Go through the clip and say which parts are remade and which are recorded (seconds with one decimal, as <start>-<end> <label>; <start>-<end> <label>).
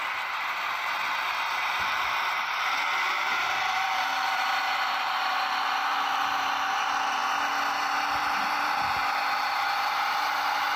0.0-7.2 remade; 7.2-8.1 recorded; 8.1-9.0 remade; 9.0-9.9 recorded; 9.9-10.8 remade